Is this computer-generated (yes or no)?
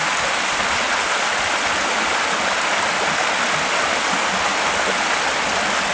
no